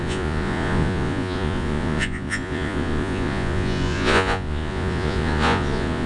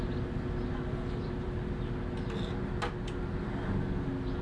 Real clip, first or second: second